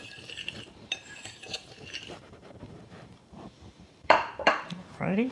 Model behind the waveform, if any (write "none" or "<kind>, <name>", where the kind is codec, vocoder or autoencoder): vocoder, BigVGAN v2